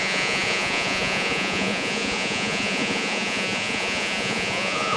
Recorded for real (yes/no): no